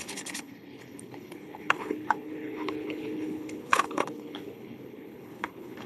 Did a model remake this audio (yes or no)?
yes